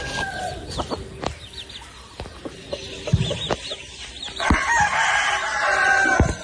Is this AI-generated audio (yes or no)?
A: no